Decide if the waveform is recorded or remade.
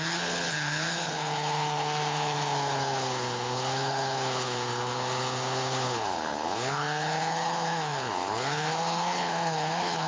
remade